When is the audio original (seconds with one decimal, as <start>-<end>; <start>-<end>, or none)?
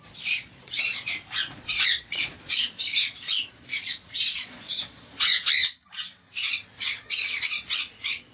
5.3-6.9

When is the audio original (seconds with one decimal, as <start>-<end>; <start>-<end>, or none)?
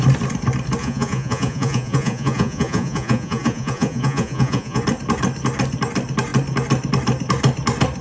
0.0-0.8; 4.8-8.0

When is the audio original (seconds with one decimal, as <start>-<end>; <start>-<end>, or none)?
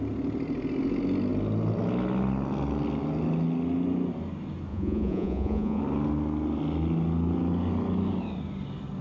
0.0-4.7; 5.8-9.0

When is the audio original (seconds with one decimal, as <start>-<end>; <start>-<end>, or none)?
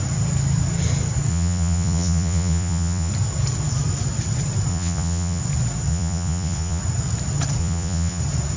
0.0-1.3; 3.1-4.7; 5.4-5.9; 6.8-7.6; 8.2-8.6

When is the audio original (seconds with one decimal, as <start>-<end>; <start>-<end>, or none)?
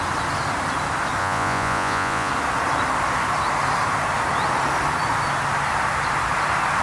0.0-1.2; 2.3-6.8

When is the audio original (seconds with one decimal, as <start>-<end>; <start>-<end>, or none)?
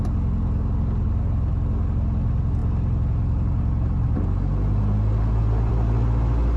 0.0-6.6